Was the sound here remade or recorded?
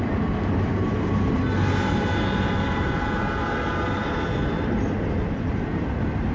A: recorded